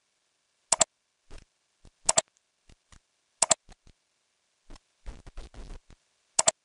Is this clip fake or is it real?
real